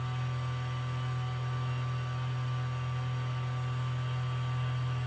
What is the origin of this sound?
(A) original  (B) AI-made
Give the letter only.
A